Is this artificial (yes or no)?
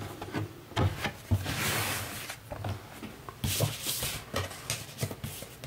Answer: no